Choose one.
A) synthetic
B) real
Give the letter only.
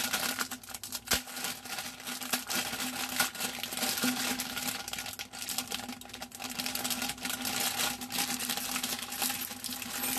B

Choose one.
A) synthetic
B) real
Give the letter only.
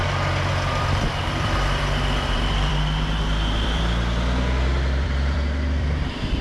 A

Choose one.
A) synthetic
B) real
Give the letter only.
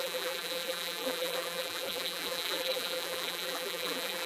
A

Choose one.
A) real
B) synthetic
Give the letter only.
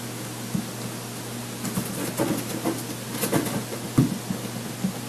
A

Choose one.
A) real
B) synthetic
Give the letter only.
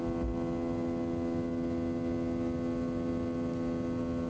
A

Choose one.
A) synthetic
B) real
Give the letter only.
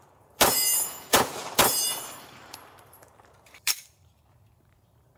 A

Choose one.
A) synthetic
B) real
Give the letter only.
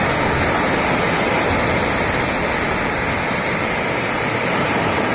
B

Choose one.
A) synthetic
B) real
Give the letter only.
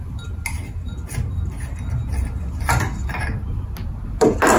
B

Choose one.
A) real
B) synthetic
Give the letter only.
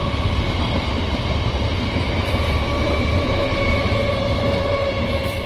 A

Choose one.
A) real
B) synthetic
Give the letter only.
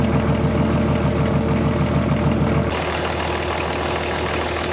A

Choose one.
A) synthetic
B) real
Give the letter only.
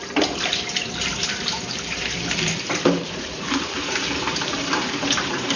A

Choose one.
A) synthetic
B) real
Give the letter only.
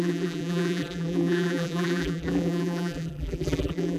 A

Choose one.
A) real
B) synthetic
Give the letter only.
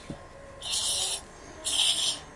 A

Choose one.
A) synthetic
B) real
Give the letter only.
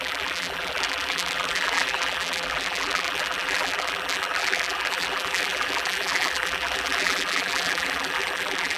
A